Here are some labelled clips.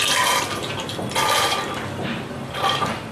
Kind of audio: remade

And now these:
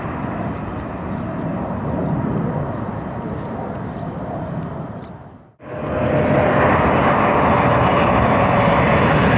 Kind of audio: recorded